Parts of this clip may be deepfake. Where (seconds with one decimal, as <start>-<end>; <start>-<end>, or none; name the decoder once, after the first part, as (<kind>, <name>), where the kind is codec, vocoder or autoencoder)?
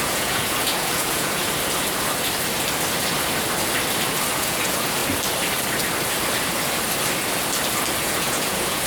0.0-1.4 (vocoder, Vocos); 4.3-5.0; 8.0-8.9